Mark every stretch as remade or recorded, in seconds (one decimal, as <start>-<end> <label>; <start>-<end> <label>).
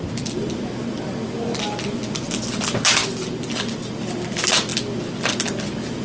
0.0-6.0 recorded